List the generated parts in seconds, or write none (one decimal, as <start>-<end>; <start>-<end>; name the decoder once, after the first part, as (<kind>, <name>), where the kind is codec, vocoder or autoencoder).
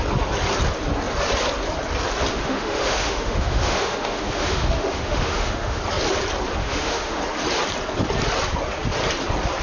2.3-5.8 (autoencoder, DAC-VAE); 6.6-7.2